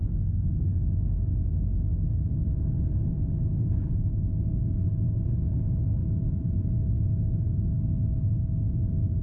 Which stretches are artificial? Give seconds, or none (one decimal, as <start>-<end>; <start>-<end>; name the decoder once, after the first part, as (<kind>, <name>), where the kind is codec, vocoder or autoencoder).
6.0-7.7 (vocoder, Vocos)